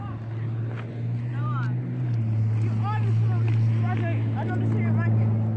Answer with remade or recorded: recorded